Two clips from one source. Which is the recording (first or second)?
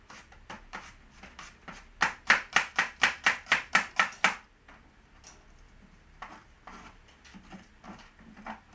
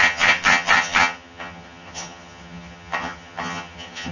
first